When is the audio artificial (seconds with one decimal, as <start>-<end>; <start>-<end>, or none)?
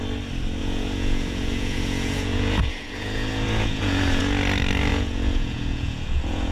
0.6-4.2; 4.9-6.5